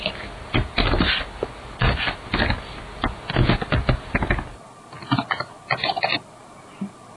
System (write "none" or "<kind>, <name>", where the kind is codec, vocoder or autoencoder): none